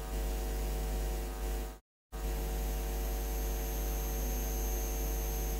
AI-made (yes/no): no